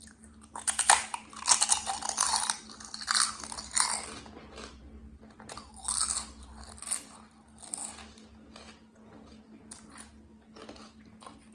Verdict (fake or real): real